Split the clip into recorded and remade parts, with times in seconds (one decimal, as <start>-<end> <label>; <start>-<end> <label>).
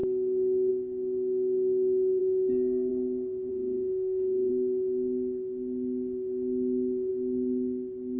0.0-3.5 recorded; 3.5-4.5 remade; 4.5-8.2 recorded